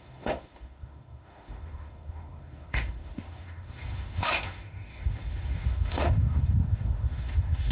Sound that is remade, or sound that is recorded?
remade